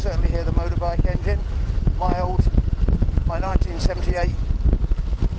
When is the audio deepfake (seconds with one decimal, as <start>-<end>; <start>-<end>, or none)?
2.0-3.5; 4.0-5.4

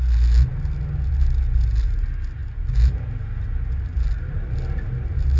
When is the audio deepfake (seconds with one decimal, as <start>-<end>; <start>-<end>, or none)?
none

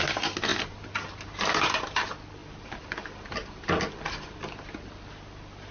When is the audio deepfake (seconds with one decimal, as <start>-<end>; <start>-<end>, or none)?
2.4-3.8